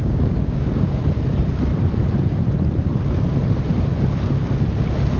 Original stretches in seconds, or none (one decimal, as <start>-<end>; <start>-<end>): 1.0-5.2